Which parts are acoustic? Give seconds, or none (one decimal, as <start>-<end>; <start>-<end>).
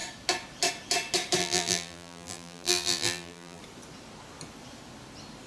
0.0-1.4; 3.6-5.5